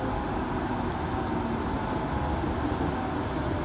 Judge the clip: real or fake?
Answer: real